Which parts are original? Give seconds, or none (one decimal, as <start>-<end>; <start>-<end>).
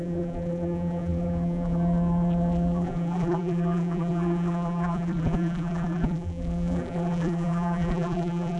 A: none